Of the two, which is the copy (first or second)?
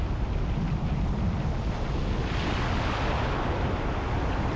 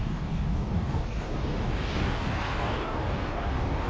second